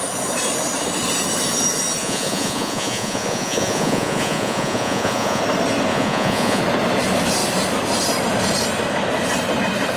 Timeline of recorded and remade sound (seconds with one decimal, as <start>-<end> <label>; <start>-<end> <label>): 0.0-2.0 recorded; 2.0-5.4 remade; 5.4-5.9 recorded; 5.9-6.6 remade; 6.6-10.0 recorded